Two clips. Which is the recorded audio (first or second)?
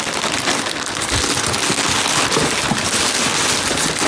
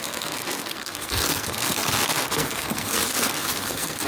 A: first